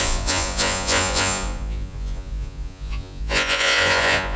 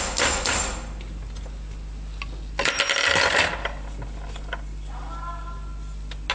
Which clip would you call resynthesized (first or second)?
first